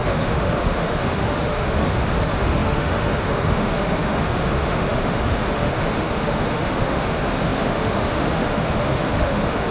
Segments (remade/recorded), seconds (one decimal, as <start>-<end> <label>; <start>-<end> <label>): 0.0-9.7 remade